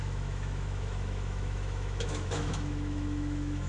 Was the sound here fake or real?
fake